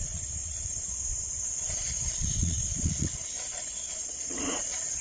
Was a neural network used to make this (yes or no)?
yes